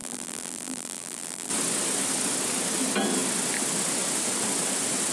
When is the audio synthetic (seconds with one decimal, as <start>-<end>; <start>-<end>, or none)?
0.0-1.5